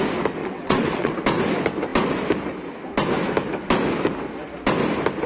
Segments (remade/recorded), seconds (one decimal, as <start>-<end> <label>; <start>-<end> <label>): 0.0-0.4 recorded; 0.4-1.1 remade; 1.1-5.3 recorded